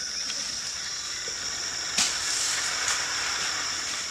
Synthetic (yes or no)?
no